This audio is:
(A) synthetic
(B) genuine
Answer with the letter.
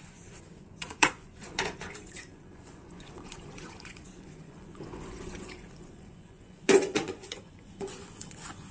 A